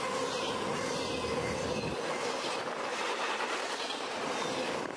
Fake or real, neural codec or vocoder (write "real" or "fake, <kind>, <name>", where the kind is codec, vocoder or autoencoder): real